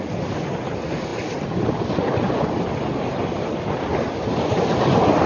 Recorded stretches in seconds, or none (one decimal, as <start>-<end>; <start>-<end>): 0.0-5.3